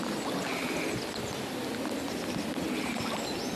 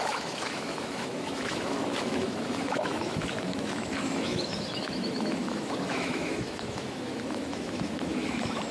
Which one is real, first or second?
first